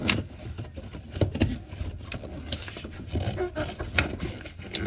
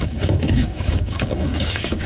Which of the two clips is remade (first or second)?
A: second